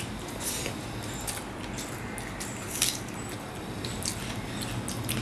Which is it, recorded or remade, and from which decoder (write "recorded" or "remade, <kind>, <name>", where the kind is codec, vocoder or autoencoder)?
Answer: recorded